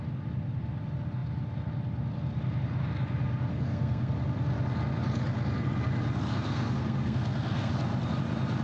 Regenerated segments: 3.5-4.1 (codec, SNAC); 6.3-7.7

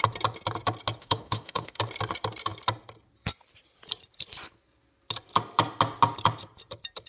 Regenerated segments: 1.0-1.8 (autoencoder, DAC-VAE)